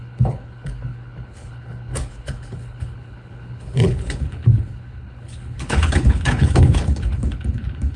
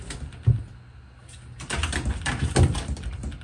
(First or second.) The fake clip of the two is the first